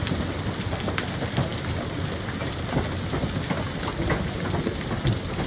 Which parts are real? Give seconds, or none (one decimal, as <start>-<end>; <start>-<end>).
0.0-5.5